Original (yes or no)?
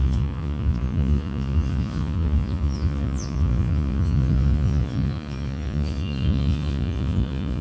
no